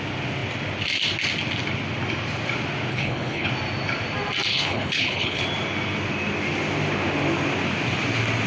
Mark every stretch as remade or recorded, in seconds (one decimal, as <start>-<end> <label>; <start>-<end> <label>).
0.0-2.9 recorded; 2.9-3.5 remade; 3.5-4.5 recorded; 4.5-5.4 remade; 5.4-8.5 recorded